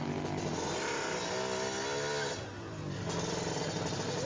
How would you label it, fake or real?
real